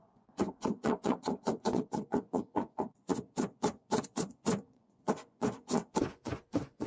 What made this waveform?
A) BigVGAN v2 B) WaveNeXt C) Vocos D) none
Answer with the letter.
C